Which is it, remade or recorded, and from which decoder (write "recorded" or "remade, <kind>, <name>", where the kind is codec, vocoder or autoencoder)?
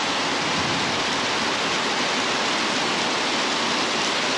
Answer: recorded